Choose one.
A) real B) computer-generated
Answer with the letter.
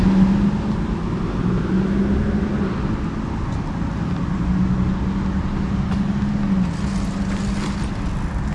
A